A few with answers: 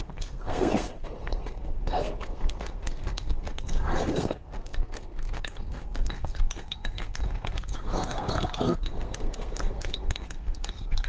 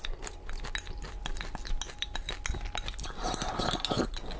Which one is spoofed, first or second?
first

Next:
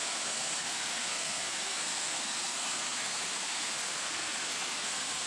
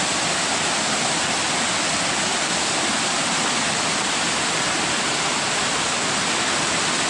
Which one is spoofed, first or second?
first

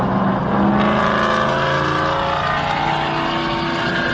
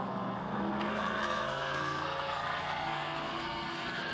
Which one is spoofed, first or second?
second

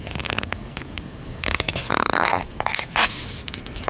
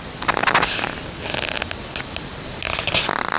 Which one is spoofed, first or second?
first